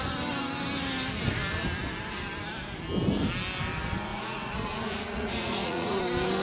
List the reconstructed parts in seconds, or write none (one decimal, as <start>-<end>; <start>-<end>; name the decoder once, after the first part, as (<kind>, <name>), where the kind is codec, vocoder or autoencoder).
4.1-6.0 (vocoder, Vocos)